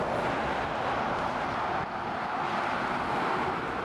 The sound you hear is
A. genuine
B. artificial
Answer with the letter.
A